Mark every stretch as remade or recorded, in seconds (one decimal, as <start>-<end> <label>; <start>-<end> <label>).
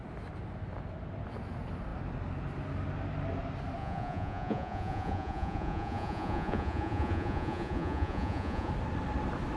0.0-3.8 recorded; 3.8-8.7 remade; 8.7-9.6 recorded